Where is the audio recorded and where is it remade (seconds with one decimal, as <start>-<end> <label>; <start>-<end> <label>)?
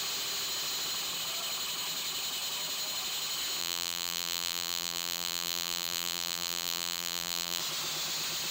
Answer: 0.0-3.6 recorded; 3.6-7.6 remade; 7.6-8.5 recorded